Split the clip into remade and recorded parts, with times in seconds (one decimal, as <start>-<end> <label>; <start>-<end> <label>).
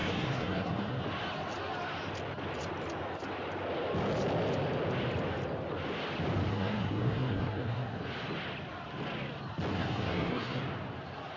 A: 0.0-1.0 remade; 1.0-6.5 recorded; 6.5-8.0 remade; 8.0-9.7 recorded; 9.7-10.6 remade; 10.6-11.4 recorded